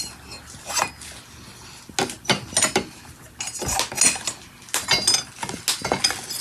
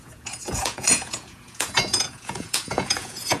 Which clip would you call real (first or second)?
first